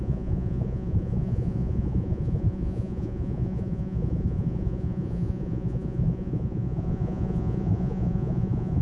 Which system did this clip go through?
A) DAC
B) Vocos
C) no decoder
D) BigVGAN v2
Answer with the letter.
B